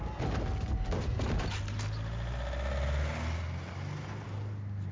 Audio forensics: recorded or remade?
recorded